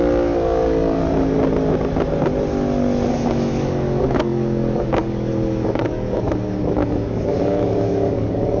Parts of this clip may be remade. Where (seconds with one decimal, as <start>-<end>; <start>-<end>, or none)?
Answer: 0.0-1.0; 3.1-8.6